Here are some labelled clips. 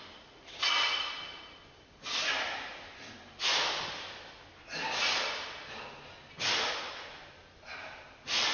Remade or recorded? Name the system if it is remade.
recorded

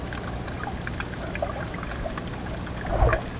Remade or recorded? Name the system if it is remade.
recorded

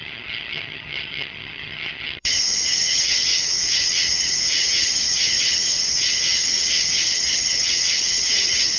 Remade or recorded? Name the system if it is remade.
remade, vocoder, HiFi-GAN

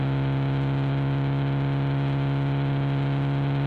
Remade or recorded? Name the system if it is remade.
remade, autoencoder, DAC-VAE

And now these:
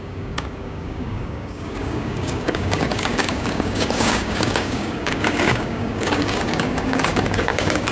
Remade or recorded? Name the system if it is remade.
remade, codec, DAC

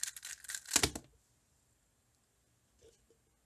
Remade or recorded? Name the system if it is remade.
recorded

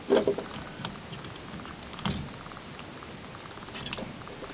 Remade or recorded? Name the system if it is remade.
recorded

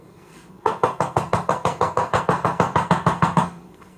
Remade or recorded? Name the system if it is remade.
remade, codec, SNAC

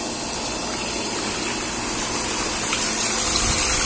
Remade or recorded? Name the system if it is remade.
recorded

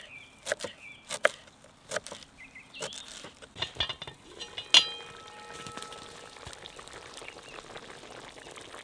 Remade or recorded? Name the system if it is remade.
recorded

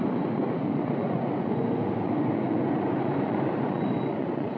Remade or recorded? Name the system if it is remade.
remade, vocoder, Vocos